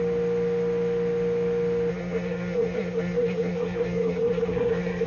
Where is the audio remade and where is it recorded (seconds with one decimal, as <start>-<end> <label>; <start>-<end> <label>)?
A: 0.0-1.9 recorded; 1.9-5.1 remade